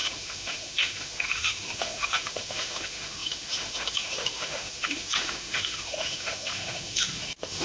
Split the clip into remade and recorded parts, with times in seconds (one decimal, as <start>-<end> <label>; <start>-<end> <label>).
0.0-7.6 remade